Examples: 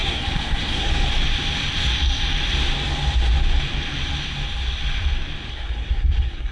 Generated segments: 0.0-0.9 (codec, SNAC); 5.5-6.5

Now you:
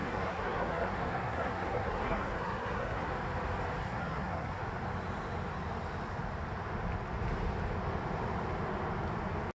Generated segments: 0.0-3.1 (codec, SNAC); 3.8-4.6

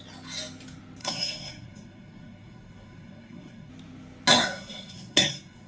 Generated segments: 1.0-3.7 (codec, SNAC); 4.3-5.7

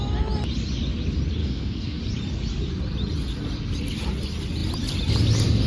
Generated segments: 1.4-2.0 (codec, SNAC)

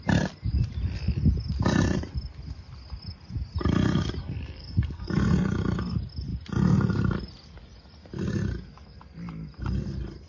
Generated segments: 4.2-5.1 (codec, SNAC)

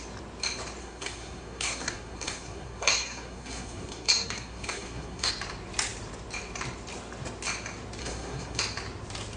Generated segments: 0.8-5.3 (codec, SNAC); 8.0-8.6

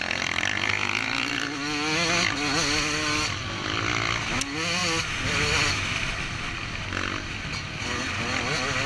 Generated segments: none